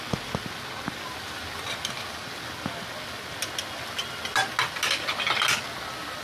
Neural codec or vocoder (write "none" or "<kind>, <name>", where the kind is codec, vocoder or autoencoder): none